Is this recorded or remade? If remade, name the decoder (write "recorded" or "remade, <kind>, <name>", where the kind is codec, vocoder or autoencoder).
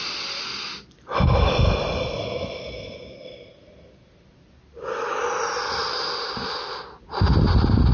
recorded